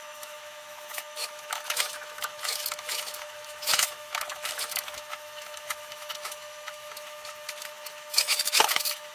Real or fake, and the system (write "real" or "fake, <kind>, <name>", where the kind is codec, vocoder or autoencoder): fake, autoencoder, DAC-VAE